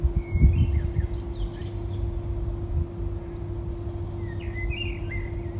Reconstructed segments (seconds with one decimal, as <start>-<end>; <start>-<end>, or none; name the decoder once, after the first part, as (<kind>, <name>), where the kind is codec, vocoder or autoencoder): none